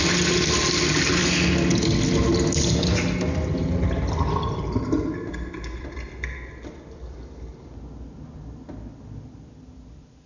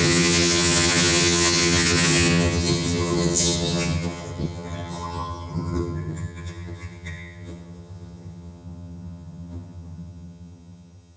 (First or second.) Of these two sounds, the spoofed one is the second